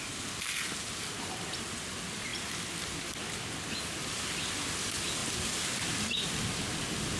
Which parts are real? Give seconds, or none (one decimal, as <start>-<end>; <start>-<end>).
0.0-7.2